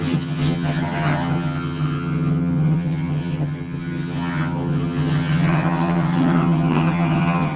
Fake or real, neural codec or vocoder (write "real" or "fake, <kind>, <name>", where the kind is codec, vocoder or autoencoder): fake, vocoder, HiFi-GAN